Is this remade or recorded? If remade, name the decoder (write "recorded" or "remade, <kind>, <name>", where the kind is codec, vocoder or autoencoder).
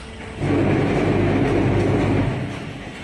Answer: recorded